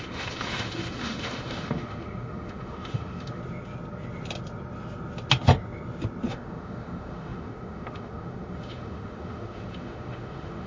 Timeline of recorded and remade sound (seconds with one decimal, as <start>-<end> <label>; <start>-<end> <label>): 0.0-3.4 remade; 3.4-6.3 recorded; 6.3-10.7 remade